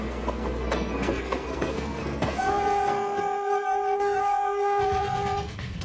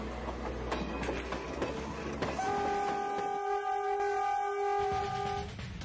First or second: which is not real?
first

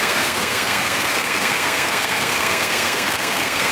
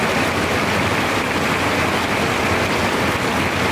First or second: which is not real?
first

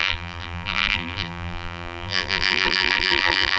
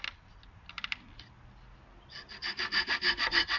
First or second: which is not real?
first